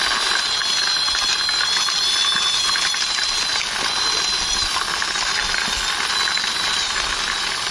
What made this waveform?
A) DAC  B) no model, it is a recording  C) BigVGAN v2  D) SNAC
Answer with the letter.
B